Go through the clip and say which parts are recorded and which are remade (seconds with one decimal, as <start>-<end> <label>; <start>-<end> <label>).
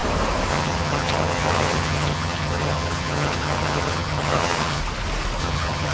0.0-0.5 recorded; 0.5-4.8 remade; 4.8-5.4 recorded; 5.4-5.9 remade